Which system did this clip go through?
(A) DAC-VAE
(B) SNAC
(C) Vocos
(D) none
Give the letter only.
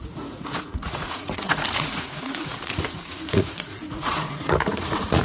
C